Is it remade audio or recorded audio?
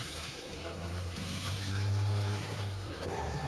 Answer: remade